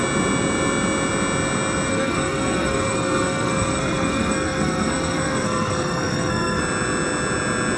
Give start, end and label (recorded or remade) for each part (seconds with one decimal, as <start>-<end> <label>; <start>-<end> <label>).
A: 0.0-1.9 recorded; 1.9-6.6 remade; 6.6-7.8 recorded